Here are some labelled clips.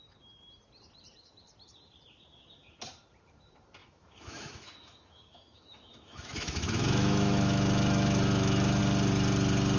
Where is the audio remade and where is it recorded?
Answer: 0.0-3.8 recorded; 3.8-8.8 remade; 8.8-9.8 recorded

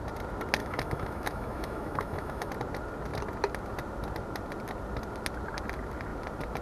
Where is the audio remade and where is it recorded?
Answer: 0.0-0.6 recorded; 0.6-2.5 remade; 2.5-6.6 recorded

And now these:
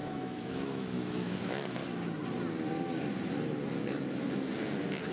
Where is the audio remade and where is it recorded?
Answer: 0.0-1.8 remade; 1.8-5.1 recorded

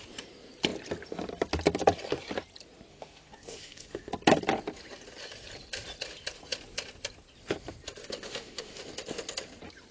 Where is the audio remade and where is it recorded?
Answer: 0.0-2.9 recorded; 2.9-4.1 remade; 4.1-8.0 recorded; 8.0-8.8 remade; 8.8-9.9 recorded